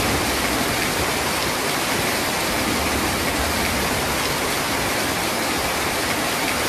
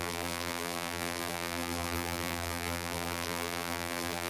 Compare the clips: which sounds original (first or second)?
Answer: first